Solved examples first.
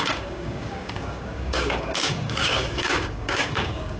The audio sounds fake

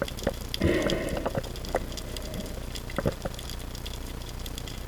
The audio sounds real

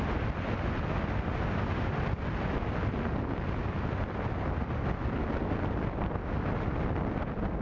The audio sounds real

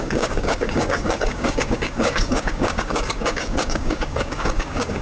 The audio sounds fake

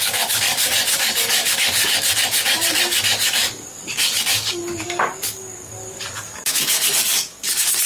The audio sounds fake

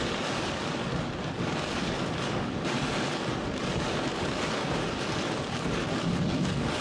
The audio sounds fake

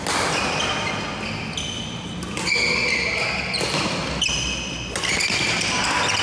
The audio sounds real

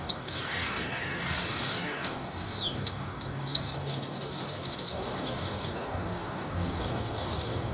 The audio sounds fake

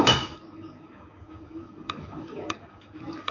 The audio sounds fake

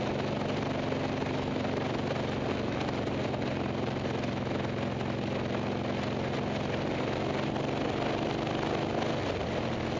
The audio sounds real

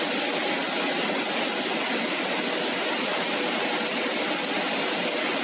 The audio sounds real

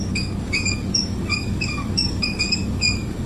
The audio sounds fake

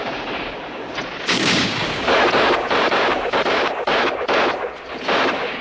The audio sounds fake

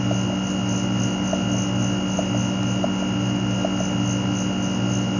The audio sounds real